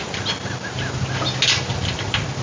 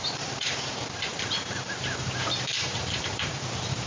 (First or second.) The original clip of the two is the first